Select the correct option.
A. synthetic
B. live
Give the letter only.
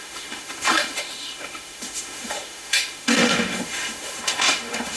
A